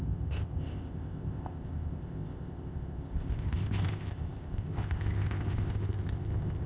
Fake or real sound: fake